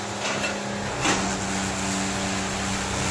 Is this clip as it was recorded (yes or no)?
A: yes